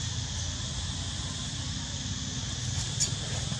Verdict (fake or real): real